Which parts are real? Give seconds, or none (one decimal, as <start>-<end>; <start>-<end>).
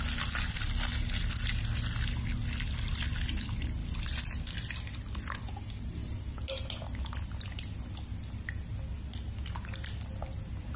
0.0-10.8